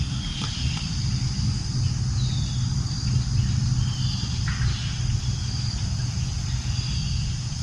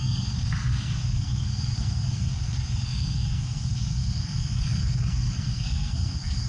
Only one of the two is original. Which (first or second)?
first